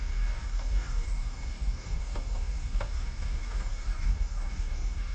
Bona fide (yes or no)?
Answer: no